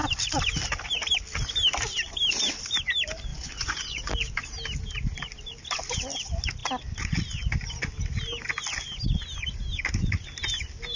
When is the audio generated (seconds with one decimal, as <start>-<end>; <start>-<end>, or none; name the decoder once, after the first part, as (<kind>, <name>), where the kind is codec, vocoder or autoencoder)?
3.3-4.1 (vocoder, Vocos)